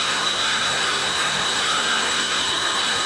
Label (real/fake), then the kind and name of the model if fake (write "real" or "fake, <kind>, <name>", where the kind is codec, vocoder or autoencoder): fake, codec, SNAC